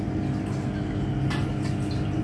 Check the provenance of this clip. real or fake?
real